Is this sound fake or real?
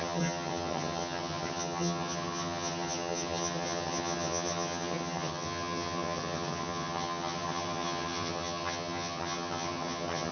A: fake